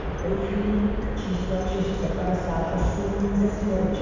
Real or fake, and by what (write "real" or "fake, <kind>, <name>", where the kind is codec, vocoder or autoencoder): real